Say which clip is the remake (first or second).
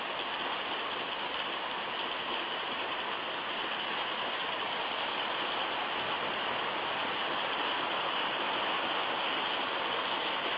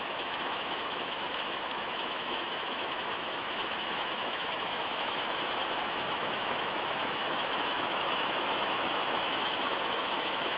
second